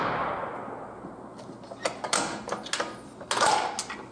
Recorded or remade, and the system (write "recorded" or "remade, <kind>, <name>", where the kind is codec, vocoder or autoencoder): recorded